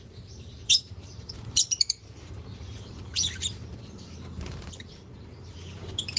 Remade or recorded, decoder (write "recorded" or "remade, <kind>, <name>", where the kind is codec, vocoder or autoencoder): remade, vocoder, BigVGAN v2